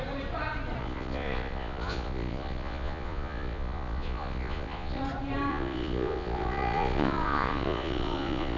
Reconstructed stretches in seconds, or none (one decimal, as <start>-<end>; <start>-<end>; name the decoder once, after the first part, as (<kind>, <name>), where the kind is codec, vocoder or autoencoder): 0.8-5.0 (vocoder, Vocos); 5.5-8.6